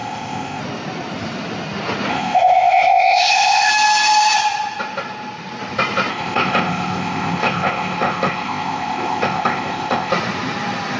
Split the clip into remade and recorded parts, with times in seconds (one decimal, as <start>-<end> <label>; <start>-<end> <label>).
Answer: 0.0-0.6 remade; 0.6-2.1 recorded; 2.1-3.7 remade; 3.7-6.1 recorded; 6.1-10.1 remade; 10.1-11.0 recorded